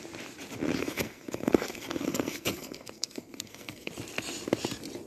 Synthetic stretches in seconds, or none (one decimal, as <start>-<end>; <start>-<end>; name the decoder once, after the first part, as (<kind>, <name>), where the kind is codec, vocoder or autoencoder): 0.8-3.9 (codec, SNAC)